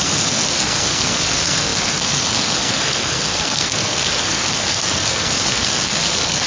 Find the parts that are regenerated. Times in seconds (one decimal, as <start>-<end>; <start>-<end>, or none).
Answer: 0.0-6.5